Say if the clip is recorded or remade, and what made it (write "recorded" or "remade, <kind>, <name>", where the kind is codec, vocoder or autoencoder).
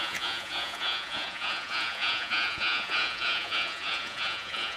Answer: remade, vocoder, Vocos